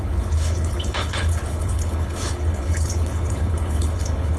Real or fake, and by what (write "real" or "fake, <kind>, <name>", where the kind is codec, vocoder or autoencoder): fake, codec, HILCodec